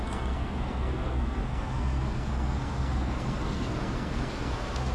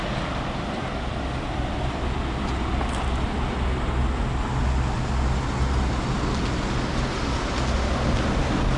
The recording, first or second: second